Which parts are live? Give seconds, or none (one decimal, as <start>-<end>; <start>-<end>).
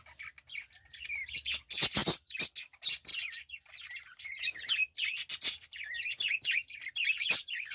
0.0-7.7